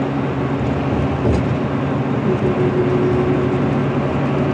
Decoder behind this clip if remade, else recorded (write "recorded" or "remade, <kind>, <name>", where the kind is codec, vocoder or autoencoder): recorded